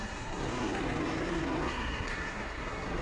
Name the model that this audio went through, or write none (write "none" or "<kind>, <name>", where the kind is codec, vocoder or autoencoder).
codec, SNAC